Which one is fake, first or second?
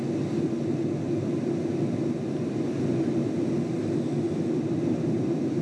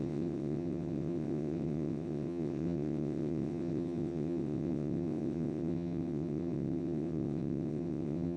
second